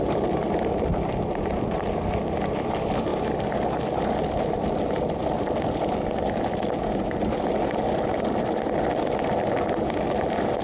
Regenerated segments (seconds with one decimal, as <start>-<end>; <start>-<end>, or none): none

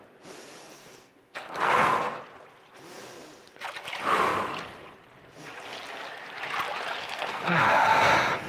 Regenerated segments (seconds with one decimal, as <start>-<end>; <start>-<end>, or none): 0.6-2.2; 7.0-8.1

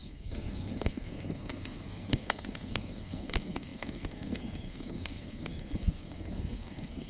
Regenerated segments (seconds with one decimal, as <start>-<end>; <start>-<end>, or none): 0.0-7.1

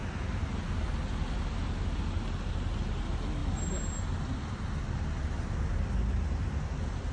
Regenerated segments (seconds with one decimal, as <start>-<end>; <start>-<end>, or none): none